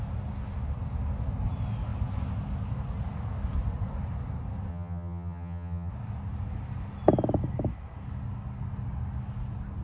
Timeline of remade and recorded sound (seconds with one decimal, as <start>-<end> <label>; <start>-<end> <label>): 0.0-4.7 recorded; 4.7-5.9 remade; 5.9-9.8 recorded